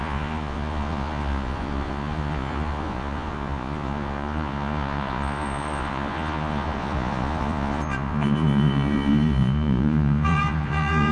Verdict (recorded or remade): remade